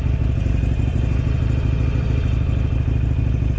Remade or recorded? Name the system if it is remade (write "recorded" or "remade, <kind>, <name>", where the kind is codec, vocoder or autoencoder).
recorded